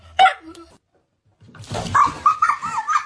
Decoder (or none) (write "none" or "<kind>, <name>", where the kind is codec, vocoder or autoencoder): vocoder, BigVGAN v2